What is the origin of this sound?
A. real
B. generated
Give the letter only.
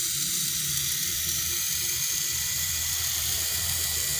B